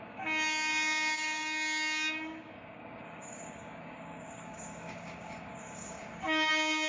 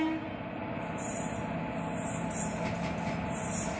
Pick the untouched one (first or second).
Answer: second